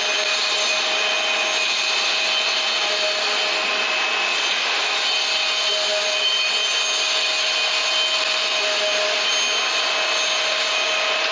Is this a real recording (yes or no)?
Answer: yes